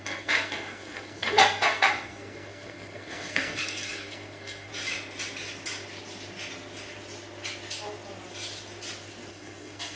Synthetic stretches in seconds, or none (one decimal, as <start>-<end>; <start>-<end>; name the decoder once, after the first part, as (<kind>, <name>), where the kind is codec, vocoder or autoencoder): 0.0-4.7 (codec, SNAC); 9.3-10.0